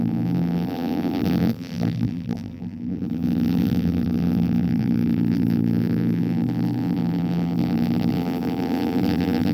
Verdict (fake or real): fake